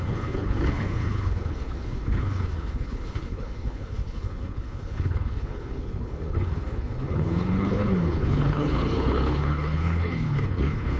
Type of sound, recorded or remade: remade